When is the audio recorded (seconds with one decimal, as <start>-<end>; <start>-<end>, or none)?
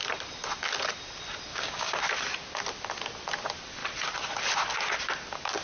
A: 0.0-1.5; 2.0-5.6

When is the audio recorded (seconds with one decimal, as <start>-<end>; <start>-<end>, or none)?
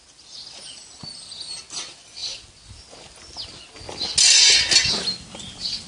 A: 0.0-5.9